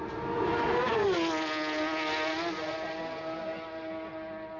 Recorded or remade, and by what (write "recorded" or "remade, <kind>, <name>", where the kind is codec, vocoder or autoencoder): recorded